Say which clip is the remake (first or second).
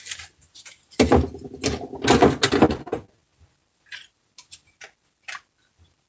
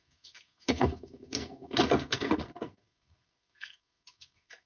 second